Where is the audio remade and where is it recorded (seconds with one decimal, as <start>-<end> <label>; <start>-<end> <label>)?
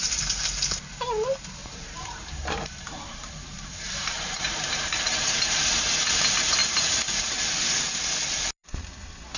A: 0.0-1.6 recorded; 1.6-5.7 remade; 5.7-9.4 recorded